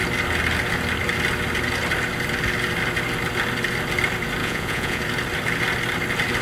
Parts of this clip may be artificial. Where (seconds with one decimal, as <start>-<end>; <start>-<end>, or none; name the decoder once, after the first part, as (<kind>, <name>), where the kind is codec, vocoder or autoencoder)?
4.4-5.0 (vocoder, Vocos)